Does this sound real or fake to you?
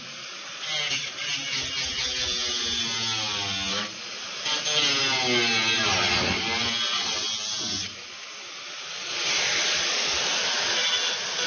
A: real